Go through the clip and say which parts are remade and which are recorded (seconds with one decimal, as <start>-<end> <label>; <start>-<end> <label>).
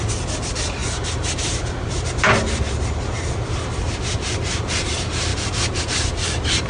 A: 0.0-6.7 recorded